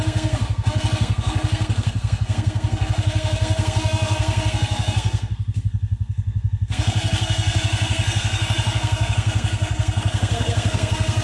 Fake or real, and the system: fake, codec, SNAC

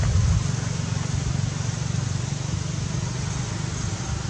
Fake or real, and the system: real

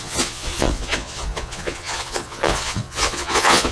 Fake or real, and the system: fake, vocoder, Vocos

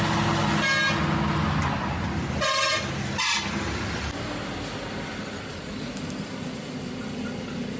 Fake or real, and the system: real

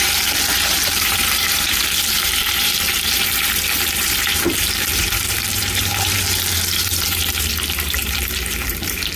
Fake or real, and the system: fake, vocoder, BigVGAN v2